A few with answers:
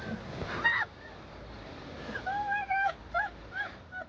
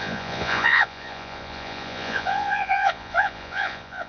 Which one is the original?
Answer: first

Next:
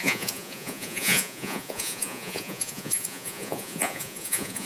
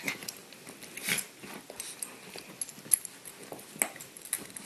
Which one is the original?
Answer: second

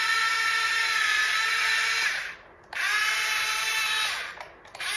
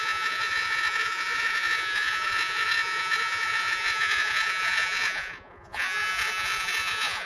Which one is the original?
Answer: first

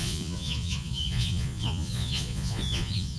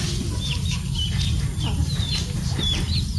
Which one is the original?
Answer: second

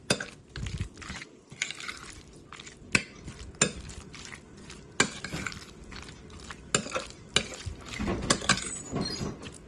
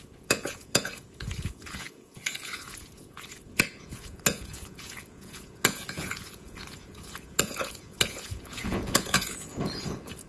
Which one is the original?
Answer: first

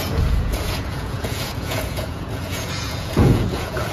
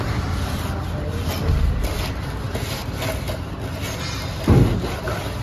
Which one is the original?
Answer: second